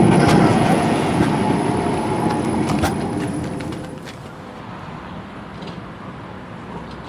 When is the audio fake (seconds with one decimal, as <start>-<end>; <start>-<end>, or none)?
0.5-1.3